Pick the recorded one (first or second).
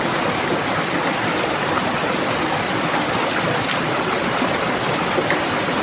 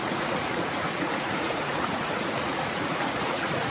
first